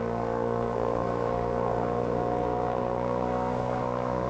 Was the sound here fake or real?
fake